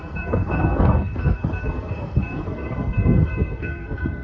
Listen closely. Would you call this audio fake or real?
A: fake